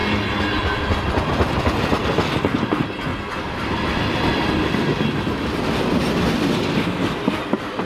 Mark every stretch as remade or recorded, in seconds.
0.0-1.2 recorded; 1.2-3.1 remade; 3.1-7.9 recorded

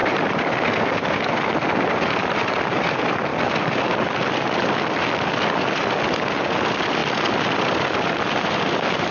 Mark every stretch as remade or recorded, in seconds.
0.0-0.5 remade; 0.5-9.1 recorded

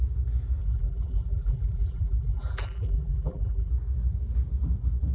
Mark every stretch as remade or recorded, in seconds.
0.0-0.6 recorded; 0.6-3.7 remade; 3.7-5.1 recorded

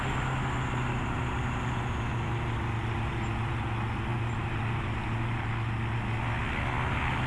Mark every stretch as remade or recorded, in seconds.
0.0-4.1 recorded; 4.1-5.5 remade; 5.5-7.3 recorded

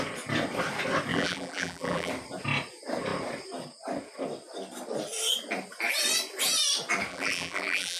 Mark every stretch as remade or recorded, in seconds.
0.0-1.1 recorded; 1.1-2.1 remade; 2.1-7.1 recorded; 7.1-8.0 remade